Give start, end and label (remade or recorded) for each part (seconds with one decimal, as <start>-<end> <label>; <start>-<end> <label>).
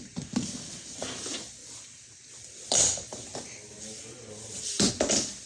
0.0-5.5 recorded